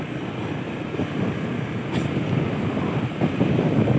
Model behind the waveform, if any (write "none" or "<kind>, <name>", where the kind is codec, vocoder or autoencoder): none